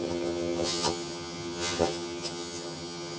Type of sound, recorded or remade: remade